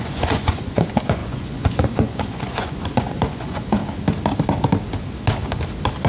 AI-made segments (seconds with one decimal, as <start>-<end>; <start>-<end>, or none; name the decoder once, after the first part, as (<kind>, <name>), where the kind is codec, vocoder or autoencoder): 0.0-3.8 (vocoder, Vocos)